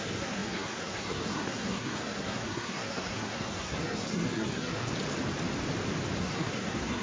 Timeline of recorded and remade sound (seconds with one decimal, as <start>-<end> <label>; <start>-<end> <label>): 0.0-4.9 remade; 4.9-6.2 recorded; 6.2-7.0 remade